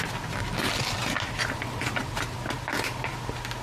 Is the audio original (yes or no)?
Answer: yes